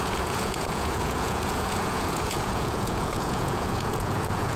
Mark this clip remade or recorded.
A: remade